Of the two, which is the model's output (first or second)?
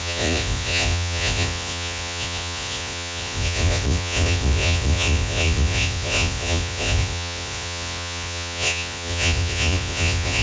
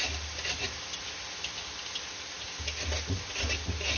first